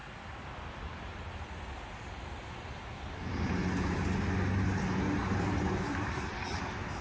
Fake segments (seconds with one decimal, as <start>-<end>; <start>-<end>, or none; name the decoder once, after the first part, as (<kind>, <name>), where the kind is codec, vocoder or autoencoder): 5.2-6.3 (vocoder, BigVGAN v2)

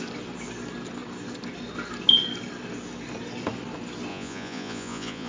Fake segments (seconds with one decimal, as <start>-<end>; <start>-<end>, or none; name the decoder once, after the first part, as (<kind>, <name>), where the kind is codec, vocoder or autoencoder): 4.1-5.3 (vocoder, Vocos)

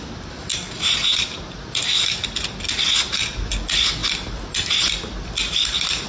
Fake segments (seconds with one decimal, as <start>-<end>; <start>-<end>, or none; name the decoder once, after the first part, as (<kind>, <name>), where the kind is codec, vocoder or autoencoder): none

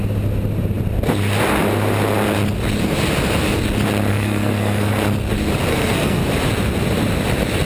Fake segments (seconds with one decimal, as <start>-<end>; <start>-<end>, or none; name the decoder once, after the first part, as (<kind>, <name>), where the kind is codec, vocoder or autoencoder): 4.1-4.9 (codec, SNAC); 5.7-6.2